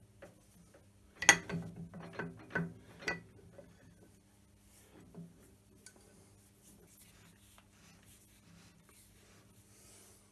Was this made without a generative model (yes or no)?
yes